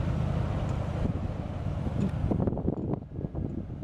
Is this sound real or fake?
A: real